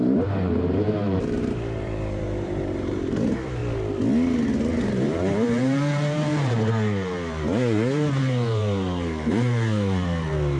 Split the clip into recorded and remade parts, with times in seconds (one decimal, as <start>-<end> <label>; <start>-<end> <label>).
0.0-3.6 remade; 3.6-4.8 recorded; 4.8-10.6 remade